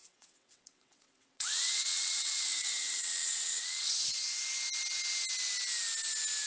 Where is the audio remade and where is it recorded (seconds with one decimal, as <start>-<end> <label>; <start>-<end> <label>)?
0.0-3.9 remade; 3.9-6.5 recorded